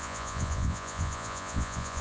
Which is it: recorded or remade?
remade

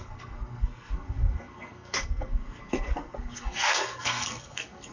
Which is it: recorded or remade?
remade